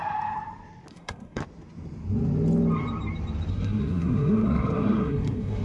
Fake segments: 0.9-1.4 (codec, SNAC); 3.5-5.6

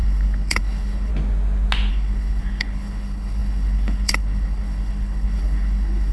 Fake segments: 0.0-1.1 (codec, HILCodec); 1.9-6.1

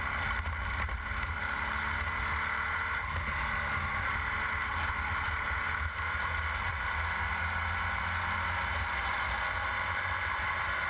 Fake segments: none

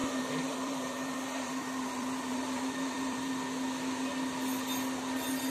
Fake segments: 0.0-3.3 (vocoder, BigVGAN v2)

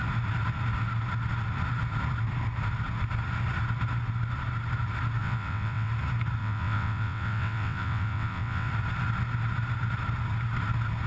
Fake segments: 5.2-5.9 (vocoder, WaveNeXt); 6.4-8.7

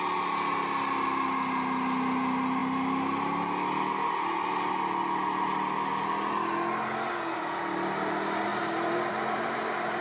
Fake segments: 8.5-10.0 (vocoder, BigVGAN v2)